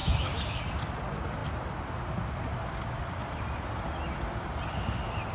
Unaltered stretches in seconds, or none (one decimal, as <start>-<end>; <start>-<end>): 0.6-5.3